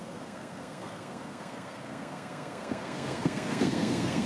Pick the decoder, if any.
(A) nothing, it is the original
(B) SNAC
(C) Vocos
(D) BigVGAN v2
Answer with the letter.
B